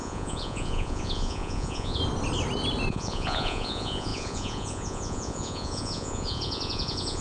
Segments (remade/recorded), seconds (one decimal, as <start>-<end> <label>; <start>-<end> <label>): 0.0-2.0 remade; 2.0-2.9 recorded; 2.9-7.2 remade

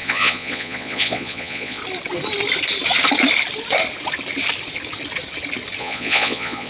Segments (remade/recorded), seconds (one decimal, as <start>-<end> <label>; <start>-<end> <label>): 0.0-1.8 remade; 1.8-5.8 recorded; 5.8-6.7 remade

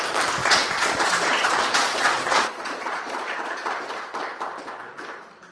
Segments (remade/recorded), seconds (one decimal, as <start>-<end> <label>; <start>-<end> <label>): 0.0-0.4 recorded; 0.4-3.7 remade; 3.7-5.5 recorded